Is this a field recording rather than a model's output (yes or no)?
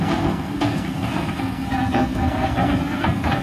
no